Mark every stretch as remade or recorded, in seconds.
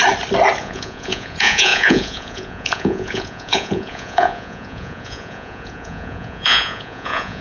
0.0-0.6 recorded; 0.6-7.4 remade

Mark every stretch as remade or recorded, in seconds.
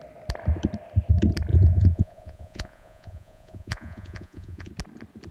0.0-1.5 recorded; 1.5-4.7 remade; 4.7-5.3 recorded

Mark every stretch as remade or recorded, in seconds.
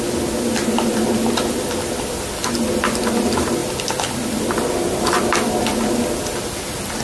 0.0-7.0 recorded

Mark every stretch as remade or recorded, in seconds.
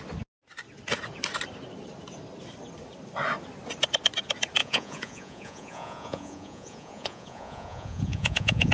0.0-4.6 recorded; 4.6-8.7 remade